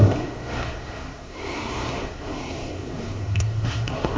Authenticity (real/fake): fake